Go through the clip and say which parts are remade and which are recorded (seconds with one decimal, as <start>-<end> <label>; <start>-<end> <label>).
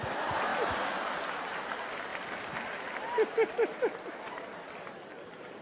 0.0-0.5 recorded; 0.5-1.0 remade; 1.0-2.1 recorded; 2.1-2.7 remade; 2.7-3.7 recorded; 3.7-5.6 remade